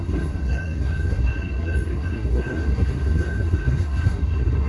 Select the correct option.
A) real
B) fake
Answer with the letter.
B